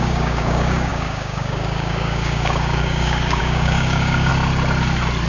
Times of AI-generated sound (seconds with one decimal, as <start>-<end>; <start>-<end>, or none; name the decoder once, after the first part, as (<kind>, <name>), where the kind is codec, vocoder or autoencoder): 0.0-4.3 (codec, DAC)